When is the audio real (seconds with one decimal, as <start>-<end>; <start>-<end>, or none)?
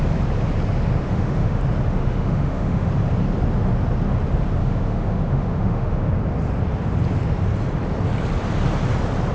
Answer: 0.0-1.0; 1.6-2.0; 2.9-4.6; 6.1-9.3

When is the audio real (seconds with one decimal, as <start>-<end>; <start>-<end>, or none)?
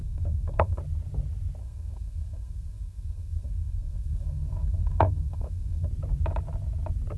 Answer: 0.8-1.6; 5.9-7.2